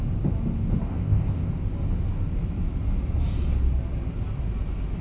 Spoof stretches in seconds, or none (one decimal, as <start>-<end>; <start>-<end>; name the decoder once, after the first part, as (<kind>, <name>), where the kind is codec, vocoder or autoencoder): 0.9-1.5 (codec, ZipCodec)

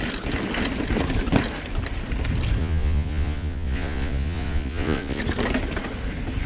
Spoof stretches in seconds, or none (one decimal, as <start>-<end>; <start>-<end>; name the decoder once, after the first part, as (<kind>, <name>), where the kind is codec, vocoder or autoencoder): 2.6-5.2 (vocoder, Vocos)

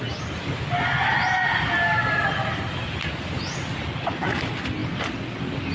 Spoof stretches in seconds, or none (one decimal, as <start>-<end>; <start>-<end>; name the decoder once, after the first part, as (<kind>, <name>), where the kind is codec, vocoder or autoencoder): none

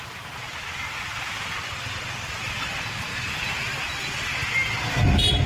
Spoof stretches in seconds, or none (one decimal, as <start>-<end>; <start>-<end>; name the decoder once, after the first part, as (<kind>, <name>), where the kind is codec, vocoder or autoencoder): none

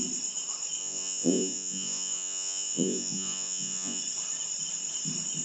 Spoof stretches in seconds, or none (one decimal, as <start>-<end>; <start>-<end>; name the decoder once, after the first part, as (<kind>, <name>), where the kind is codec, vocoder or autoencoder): 0.8-4.0 (vocoder, Vocos)

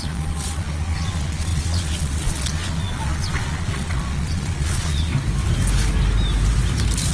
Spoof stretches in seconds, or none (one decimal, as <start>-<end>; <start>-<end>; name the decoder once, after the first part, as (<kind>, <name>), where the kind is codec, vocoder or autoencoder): 0.0-5.1 (vocoder, Vocos)